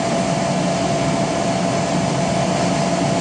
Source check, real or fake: real